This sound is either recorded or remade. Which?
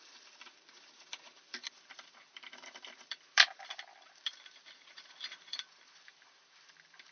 remade